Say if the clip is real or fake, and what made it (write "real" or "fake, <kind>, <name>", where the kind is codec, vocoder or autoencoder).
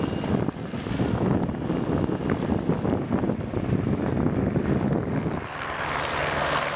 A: real